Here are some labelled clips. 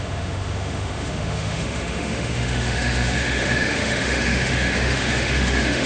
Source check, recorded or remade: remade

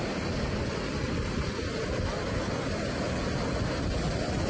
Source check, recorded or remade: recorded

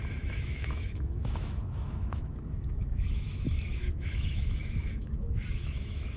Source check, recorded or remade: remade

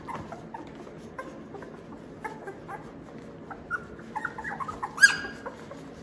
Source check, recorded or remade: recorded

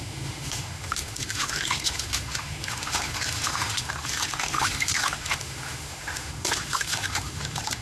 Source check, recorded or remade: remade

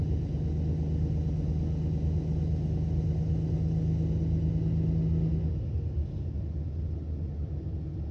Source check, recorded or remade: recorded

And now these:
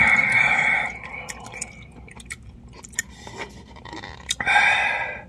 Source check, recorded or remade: recorded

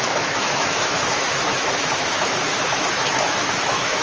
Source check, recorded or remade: remade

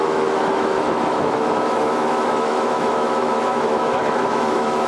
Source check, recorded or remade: remade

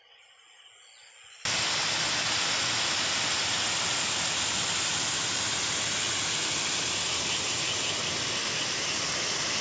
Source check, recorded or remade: recorded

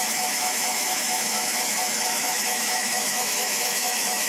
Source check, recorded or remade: remade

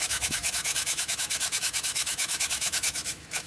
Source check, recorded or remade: remade